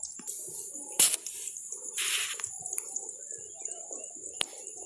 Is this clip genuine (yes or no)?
yes